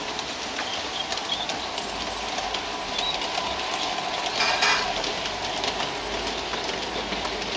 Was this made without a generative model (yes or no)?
yes